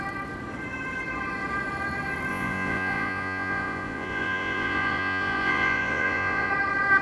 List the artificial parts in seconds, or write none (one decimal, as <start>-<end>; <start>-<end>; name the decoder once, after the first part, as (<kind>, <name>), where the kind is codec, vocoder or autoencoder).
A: 2.3-6.5 (vocoder, Vocos)